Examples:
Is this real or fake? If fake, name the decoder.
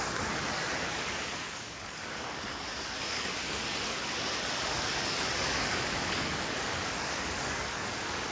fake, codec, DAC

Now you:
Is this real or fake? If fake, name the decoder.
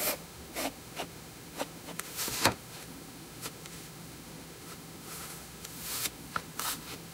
fake, autoencoder, DAC-VAE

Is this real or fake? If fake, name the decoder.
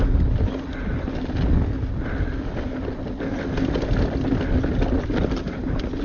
real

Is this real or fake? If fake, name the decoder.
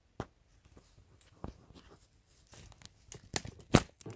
real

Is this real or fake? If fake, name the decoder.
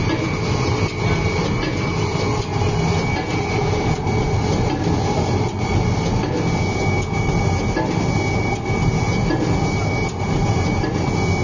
real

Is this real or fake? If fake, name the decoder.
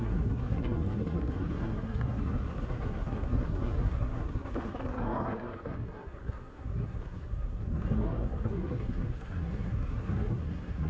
fake, codec, SNAC